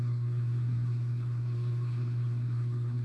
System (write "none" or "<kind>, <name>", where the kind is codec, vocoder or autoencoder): codec, SNAC